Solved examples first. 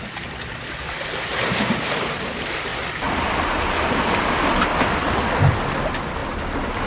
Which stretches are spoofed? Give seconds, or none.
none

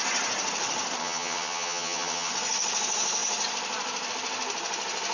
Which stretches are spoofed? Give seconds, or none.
1.0-2.3

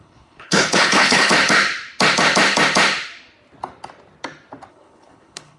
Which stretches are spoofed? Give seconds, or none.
0.0-1.3; 4.7-5.6